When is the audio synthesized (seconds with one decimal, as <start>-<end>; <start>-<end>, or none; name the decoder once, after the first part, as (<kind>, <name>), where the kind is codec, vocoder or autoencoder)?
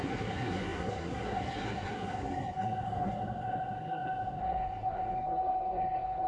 0.0-6.3 (codec, SNAC)